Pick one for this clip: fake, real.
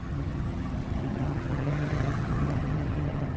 fake